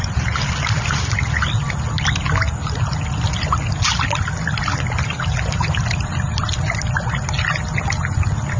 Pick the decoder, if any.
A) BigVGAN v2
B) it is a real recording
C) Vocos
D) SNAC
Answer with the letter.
B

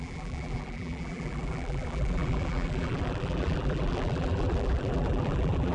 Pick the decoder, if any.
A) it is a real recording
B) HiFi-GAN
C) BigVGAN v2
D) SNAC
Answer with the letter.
C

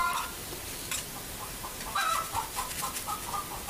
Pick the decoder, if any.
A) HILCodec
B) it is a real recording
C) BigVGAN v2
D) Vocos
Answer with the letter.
C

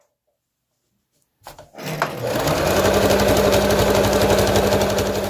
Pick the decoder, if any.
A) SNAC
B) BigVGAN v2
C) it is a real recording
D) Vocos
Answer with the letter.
C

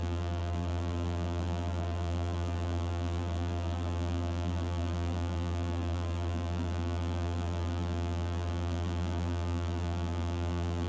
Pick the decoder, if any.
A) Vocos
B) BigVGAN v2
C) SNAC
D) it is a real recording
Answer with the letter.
B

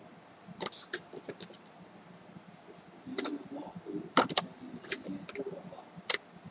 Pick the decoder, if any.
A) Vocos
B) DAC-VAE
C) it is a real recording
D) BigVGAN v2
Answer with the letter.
C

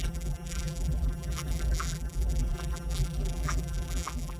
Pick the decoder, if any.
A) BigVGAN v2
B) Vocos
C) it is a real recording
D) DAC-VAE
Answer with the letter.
A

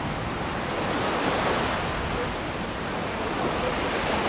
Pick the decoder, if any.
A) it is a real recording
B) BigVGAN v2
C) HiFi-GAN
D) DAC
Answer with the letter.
A